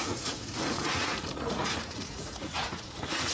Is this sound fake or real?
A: fake